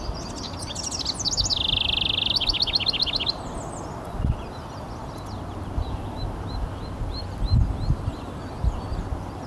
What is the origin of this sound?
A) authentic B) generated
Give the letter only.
A